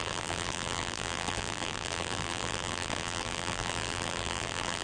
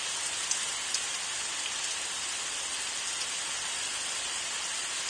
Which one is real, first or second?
second